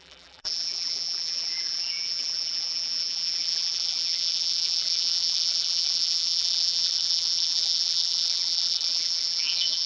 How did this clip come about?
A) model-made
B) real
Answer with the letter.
A